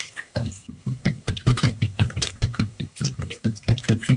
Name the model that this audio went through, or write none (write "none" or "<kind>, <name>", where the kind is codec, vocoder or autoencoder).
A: codec, SNAC